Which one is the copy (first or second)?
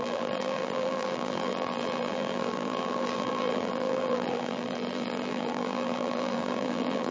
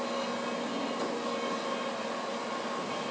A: first